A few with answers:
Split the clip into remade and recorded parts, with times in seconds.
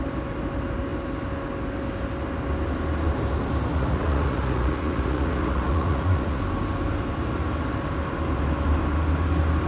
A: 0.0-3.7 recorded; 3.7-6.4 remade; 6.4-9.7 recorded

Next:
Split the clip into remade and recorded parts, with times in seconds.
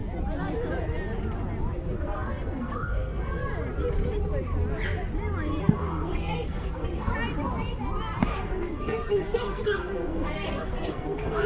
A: 0.0-2.0 recorded; 2.0-3.4 remade; 3.4-5.6 recorded; 5.6-7.1 remade; 7.1-8.4 recorded; 8.4-11.5 remade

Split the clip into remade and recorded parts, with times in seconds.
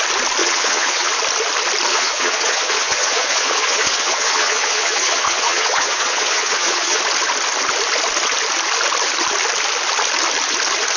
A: 0.0-0.4 recorded; 0.4-1.1 remade; 1.1-1.9 recorded; 1.9-7.0 remade; 7.0-11.0 recorded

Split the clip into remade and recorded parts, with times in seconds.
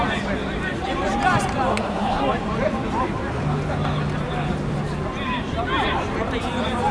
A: 0.0-1.7 recorded; 1.7-2.2 remade; 2.2-6.9 recorded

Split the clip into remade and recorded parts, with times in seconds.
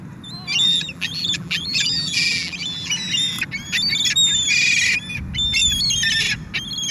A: 0.0-0.7 recorded; 0.7-2.9 remade; 2.9-6.9 recorded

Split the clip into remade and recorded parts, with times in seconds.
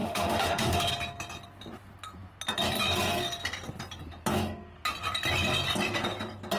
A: 0.0-0.9 remade; 0.9-6.6 recorded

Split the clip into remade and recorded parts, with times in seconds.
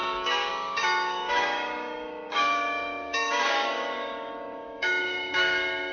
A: 0.0-5.9 remade